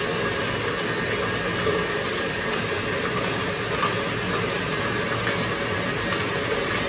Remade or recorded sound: recorded